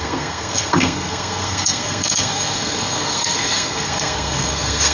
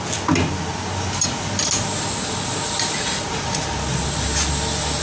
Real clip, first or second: second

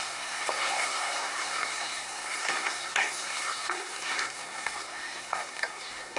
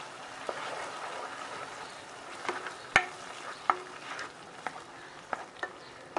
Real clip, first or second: second